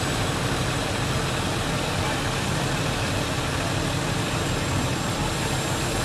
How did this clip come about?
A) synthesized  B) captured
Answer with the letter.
B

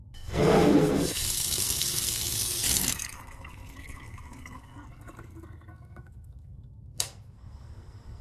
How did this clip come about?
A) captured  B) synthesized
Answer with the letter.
B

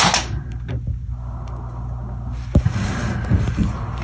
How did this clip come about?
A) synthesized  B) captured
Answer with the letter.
B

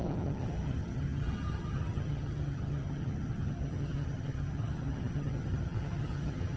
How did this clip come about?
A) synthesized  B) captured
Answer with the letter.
A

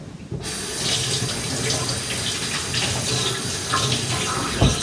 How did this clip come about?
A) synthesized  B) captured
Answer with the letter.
B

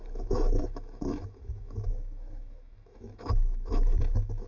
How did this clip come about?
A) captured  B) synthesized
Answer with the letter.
B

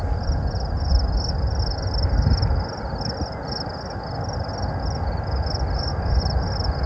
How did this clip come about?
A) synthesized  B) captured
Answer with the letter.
B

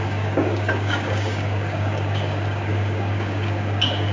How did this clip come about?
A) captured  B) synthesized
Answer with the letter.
B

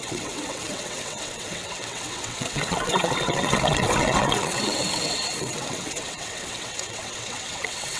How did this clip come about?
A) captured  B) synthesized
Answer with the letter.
B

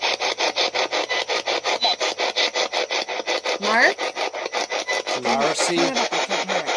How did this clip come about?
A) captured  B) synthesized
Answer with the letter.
A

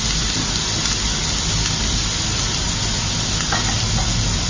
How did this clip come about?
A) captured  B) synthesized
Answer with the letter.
A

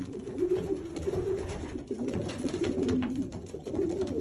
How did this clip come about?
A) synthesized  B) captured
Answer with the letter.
A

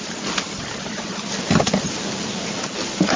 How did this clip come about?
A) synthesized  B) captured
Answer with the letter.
B